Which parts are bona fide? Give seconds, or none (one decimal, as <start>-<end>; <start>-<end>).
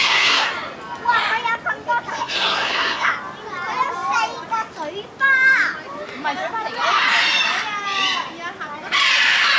0.5-2.1; 3.1-9.6